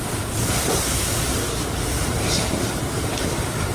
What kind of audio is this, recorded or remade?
recorded